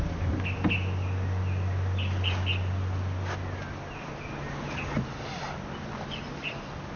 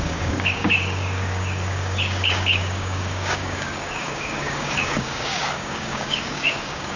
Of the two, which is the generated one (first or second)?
second